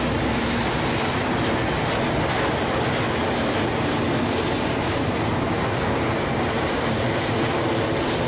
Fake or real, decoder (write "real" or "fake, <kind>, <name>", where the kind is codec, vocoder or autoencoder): real